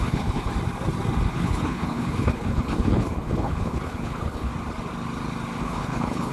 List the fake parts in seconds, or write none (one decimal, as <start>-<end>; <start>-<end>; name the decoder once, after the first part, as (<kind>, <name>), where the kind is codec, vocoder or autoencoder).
0.0-0.5 (codec, HILCodec); 1.3-4.5; 5.6-6.3